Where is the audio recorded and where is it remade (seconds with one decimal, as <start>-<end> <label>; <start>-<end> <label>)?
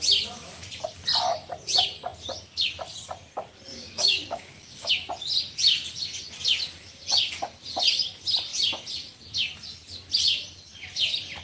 0.0-3.7 recorded; 3.7-4.9 remade; 4.9-11.4 recorded